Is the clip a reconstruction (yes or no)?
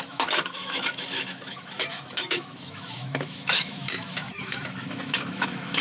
yes